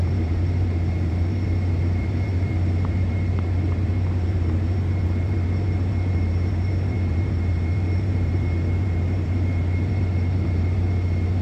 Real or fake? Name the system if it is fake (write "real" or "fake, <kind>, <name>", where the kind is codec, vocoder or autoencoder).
fake, vocoder, BigVGAN v2